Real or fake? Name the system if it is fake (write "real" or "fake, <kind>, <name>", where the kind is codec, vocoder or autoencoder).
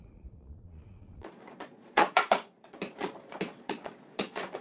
fake, vocoder, Vocos